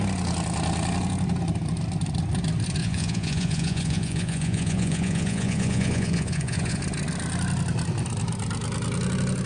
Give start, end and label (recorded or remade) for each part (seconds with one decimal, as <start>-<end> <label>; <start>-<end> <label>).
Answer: 0.0-2.8 recorded; 2.8-6.8 remade; 6.8-9.5 recorded